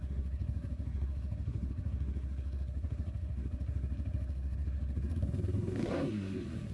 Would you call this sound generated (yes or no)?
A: yes